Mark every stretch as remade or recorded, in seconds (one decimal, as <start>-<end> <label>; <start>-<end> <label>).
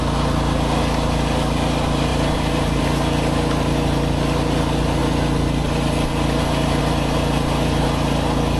0.0-2.1 recorded; 2.1-2.8 remade; 2.8-8.6 recorded